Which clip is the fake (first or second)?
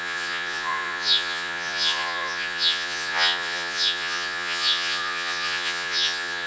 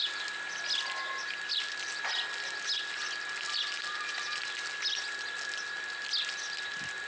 first